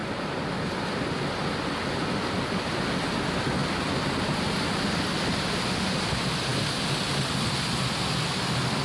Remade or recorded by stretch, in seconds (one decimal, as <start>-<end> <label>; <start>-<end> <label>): 0.0-8.8 recorded